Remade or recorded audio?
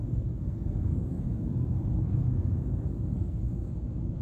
remade